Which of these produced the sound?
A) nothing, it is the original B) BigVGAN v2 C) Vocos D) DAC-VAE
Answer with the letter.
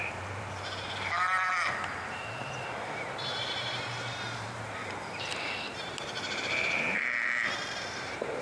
B